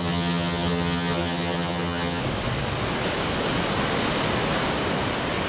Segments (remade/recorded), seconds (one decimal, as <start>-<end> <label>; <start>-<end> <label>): 0.0-2.2 remade; 2.2-5.5 recorded